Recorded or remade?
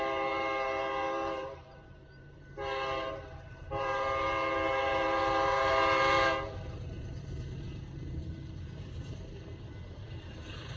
remade